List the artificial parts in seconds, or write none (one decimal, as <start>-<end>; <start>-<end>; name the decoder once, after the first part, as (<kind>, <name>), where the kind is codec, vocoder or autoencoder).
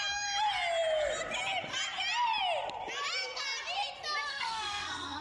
4.3-5.2 (codec, SNAC)